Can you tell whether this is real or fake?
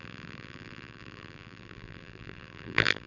fake